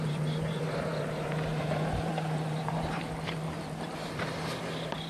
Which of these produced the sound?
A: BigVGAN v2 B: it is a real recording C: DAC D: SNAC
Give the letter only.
A